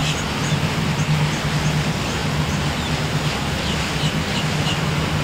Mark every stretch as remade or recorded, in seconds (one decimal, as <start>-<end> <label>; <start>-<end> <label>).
0.0-5.2 recorded